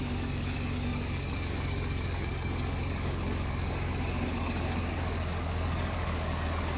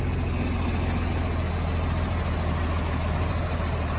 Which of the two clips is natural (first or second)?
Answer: second